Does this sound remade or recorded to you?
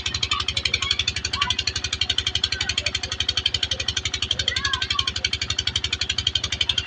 recorded